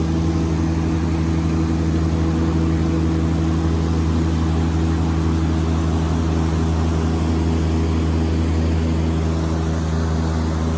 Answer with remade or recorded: recorded